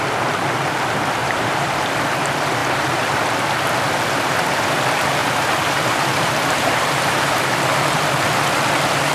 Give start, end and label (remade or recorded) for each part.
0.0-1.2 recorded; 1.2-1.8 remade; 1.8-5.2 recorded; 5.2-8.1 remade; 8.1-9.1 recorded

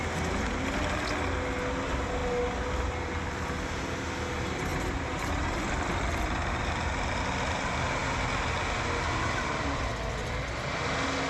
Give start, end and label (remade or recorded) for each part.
0.0-4.7 recorded; 4.7-6.7 remade; 6.7-11.3 recorded

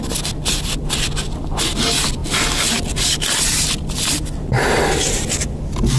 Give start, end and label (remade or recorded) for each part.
0.0-6.0 recorded